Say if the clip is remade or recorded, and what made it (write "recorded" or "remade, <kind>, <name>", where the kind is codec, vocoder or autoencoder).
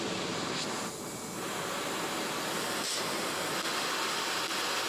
recorded